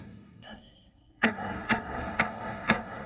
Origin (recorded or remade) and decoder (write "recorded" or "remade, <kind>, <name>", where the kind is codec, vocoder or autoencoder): remade, codec, SNAC